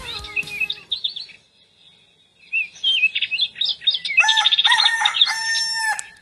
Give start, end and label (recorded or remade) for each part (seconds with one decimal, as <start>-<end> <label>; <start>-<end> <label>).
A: 0.0-2.3 recorded; 2.3-3.2 remade; 3.2-3.7 recorded; 3.7-5.8 remade; 5.8-6.2 recorded